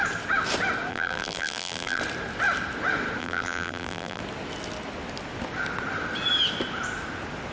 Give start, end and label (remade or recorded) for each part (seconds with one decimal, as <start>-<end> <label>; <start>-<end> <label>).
0.0-0.9 recorded; 0.9-2.0 remade; 2.0-3.2 recorded; 3.2-4.2 remade; 4.2-7.5 recorded